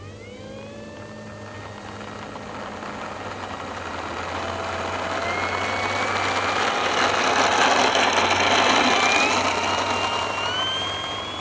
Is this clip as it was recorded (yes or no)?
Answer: yes